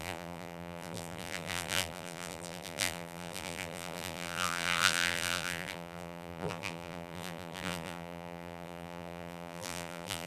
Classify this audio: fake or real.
fake